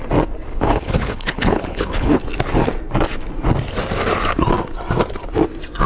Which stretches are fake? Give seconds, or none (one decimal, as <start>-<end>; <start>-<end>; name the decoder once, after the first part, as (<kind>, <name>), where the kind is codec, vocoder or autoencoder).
0.5-2.2 (codec, HILCodec)